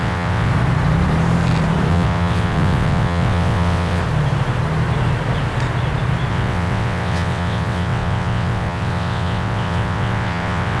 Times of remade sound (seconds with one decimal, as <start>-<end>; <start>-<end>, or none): 0.0-0.5; 1.9-4.0; 6.3-10.8